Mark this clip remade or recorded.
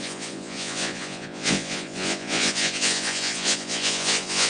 remade